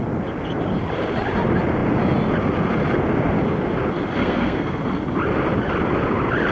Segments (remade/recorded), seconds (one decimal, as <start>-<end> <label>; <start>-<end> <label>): 0.0-4.2 recorded; 4.2-4.8 remade; 4.8-6.5 recorded